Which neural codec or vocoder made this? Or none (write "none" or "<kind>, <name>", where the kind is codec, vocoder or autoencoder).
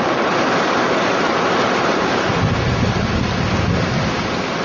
none